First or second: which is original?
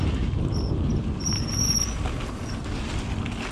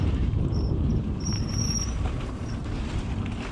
first